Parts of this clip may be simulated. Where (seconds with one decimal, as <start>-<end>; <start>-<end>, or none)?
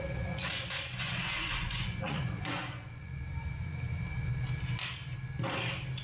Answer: 0.5-3.2